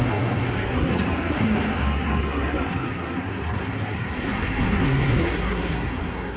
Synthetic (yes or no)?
yes